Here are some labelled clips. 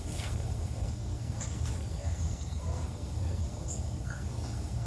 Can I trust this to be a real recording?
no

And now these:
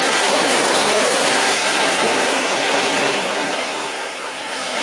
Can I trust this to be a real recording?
no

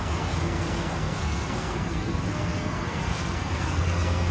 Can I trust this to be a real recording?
no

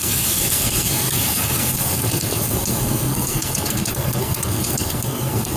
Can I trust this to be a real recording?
no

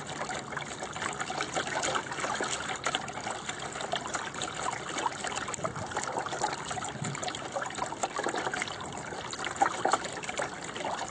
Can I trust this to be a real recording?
yes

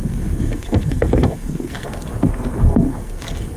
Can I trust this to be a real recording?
no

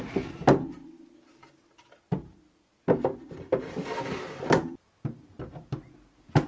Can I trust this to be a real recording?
yes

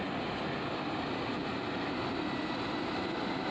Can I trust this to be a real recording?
yes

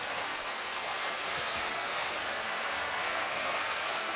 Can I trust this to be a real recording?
no